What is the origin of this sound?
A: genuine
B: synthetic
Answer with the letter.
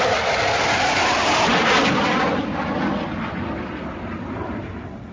A